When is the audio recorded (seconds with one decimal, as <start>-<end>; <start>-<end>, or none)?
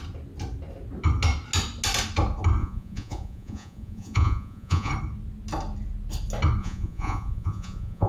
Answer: 0.0-2.6; 4.9-6.6